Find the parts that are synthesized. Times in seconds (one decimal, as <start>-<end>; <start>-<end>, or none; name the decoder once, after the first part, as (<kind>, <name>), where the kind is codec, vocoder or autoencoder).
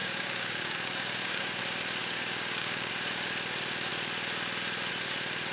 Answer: 0.0-1.6 (codec, DAC); 2.0-2.9